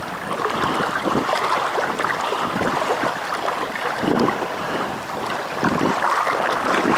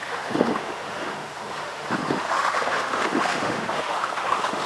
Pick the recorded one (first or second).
first